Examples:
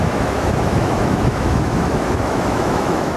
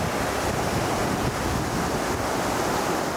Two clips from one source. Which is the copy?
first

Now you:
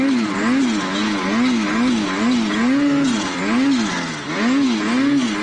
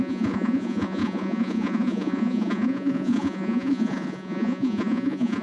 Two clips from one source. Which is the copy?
second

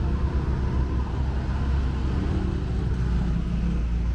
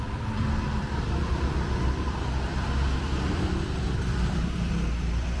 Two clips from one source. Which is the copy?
second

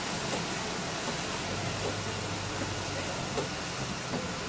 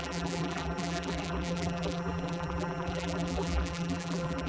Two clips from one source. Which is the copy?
second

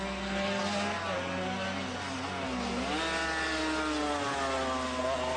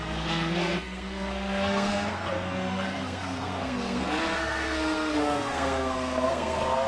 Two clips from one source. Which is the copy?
second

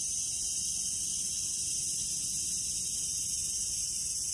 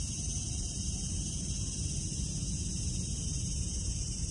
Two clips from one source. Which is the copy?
second